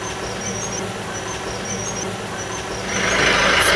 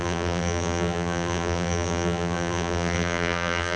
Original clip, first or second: first